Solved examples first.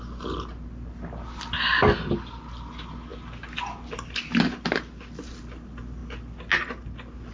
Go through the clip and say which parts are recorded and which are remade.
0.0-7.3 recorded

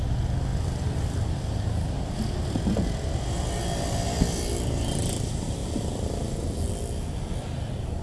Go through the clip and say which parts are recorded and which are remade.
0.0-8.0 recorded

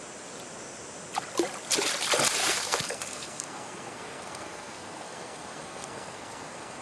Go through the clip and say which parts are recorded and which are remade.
0.0-2.4 recorded; 2.4-6.8 remade

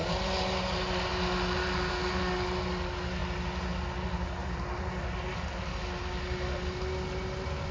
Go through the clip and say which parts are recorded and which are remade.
0.0-7.7 recorded

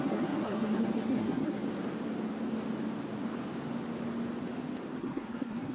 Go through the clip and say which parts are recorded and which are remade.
0.0-1.6 remade; 1.6-5.0 recorded; 5.0-5.7 remade